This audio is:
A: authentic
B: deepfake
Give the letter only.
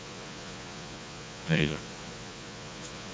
B